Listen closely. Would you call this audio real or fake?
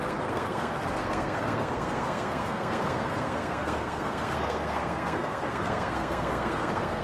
fake